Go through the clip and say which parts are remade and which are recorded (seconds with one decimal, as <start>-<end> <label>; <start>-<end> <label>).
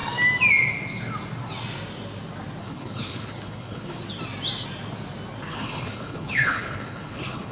0.0-2.6 recorded; 2.6-4.0 remade; 4.0-5.5 recorded; 5.5-7.5 remade